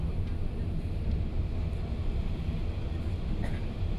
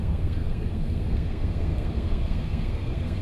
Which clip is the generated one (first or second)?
second